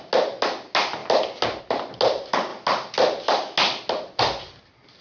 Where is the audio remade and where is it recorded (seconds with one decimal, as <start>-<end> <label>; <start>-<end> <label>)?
0.0-5.0 recorded